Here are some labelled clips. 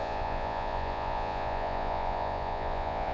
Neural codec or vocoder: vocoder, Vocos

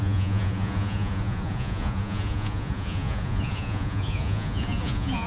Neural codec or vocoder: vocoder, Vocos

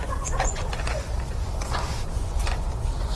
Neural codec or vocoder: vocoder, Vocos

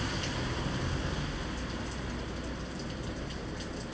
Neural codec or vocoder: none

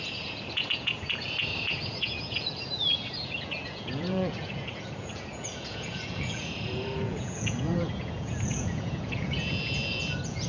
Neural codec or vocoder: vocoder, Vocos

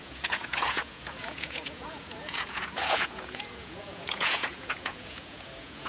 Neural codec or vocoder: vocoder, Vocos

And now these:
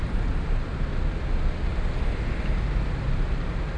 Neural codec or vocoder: none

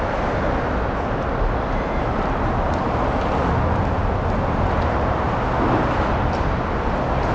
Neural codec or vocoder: none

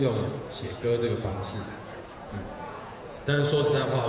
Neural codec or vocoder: vocoder, Vocos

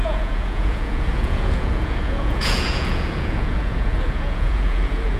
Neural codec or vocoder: vocoder, Vocos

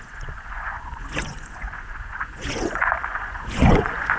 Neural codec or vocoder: vocoder, Vocos